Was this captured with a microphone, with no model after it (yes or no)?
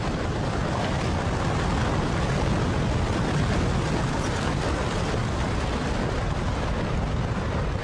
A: yes